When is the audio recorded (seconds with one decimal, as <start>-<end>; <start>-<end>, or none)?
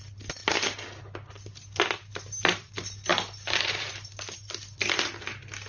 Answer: 0.0-5.7